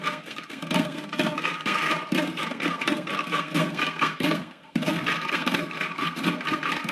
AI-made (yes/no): yes